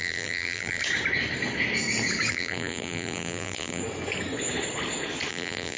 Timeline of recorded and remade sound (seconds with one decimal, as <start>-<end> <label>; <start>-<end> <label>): 0.0-0.8 remade; 0.8-2.3 recorded; 2.3-3.8 remade; 3.8-5.3 recorded; 5.3-5.8 remade